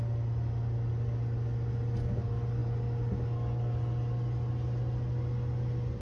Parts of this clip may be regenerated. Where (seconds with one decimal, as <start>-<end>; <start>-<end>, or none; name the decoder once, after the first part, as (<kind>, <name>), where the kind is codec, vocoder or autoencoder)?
none